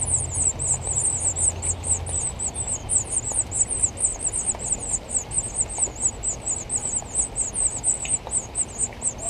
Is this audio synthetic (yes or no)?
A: no